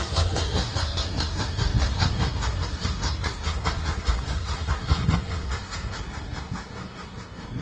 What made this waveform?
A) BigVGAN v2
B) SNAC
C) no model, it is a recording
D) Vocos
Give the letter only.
B